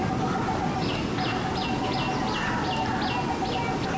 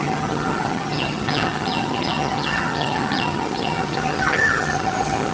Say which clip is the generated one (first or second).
second